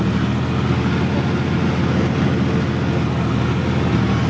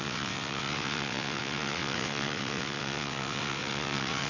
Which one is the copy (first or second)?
second